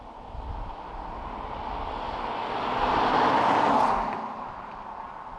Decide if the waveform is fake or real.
real